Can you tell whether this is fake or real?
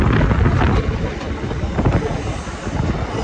real